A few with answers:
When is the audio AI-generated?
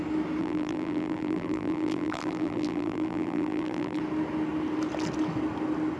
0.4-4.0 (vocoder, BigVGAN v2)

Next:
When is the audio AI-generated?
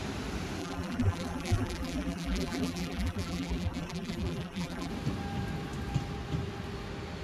0.6-4.9 (vocoder, BigVGAN v2)